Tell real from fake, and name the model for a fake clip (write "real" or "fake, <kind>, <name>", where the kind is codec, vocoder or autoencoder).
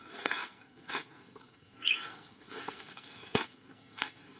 fake, codec, SNAC